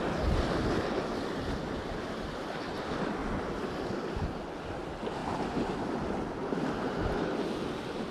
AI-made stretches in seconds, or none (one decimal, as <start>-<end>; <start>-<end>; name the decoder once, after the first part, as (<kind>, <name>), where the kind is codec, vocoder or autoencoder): none